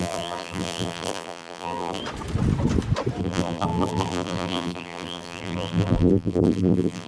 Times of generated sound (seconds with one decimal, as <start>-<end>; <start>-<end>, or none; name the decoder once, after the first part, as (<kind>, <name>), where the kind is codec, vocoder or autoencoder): 0.0-2.0 (vocoder, BigVGAN v2); 3.2-7.1